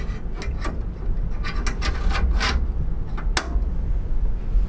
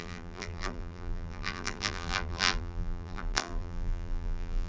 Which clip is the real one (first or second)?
first